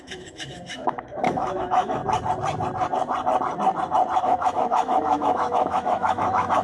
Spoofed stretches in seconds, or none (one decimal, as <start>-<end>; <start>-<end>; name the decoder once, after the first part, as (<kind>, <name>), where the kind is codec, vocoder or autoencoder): 0.0-2.0 (autoencoder, DAC-VAE); 4.2-6.6